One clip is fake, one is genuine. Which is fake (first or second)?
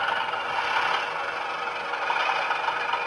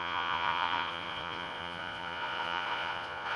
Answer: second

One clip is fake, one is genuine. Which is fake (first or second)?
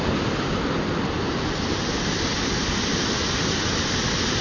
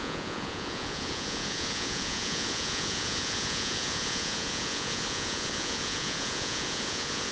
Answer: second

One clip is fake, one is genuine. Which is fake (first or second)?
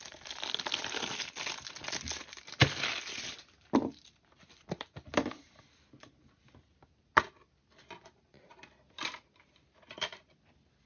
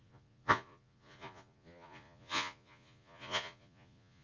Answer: second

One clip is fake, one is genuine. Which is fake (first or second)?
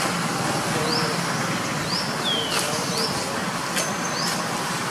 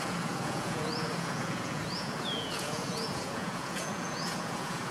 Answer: second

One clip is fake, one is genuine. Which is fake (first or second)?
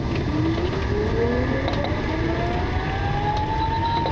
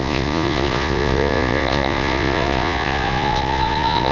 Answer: second